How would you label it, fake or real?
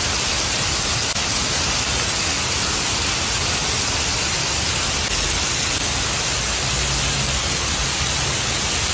real